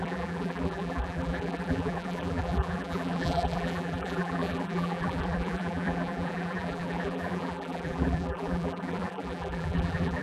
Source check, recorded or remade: remade